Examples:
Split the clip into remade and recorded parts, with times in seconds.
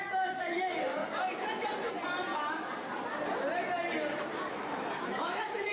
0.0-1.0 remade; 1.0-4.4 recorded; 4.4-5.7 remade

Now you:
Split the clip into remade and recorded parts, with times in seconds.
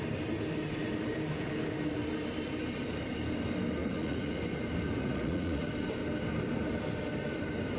0.0-3.8 recorded; 3.8-4.4 remade; 4.4-5.0 recorded; 5.0-5.7 remade; 5.7-7.8 recorded